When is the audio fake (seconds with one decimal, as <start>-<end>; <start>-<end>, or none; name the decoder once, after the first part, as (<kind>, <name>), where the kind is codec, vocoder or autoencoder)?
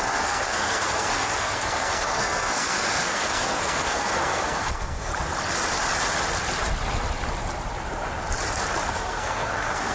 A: 0.0-5.1 (codec, SNAC); 8.9-9.9